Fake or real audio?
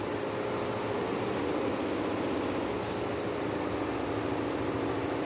real